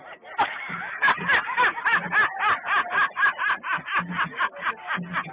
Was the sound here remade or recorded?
recorded